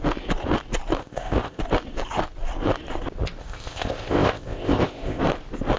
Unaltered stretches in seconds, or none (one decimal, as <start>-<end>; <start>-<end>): 0.0-1.0; 1.6-3.4; 5.2-5.8